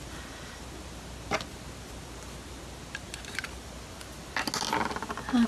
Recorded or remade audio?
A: recorded